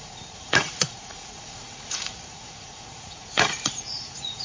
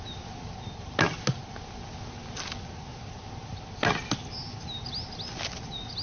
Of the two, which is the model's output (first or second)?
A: first